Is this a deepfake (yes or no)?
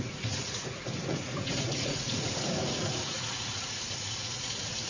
yes